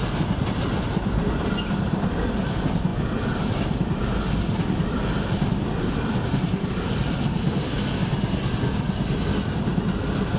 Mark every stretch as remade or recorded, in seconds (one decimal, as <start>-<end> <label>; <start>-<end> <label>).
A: 0.0-10.4 recorded